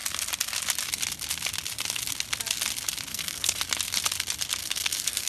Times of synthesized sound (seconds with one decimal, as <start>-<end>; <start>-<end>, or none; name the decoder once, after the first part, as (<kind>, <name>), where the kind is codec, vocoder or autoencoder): 3.1-3.6 (codec, SNAC); 4.6-5.3